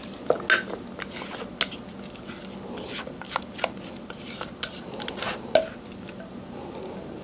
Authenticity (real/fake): real